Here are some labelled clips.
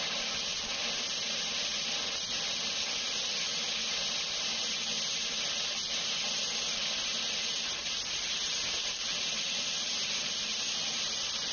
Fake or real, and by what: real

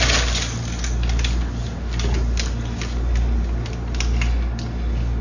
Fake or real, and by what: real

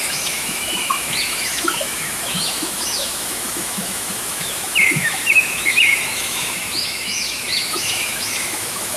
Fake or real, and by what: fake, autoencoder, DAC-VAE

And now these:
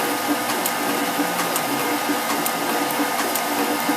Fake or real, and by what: real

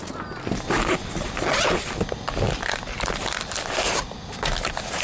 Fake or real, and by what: real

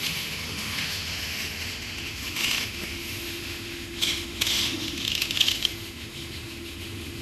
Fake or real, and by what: fake, autoencoder, DAC-VAE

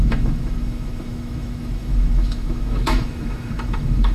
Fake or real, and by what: fake, autoencoder, DAC-VAE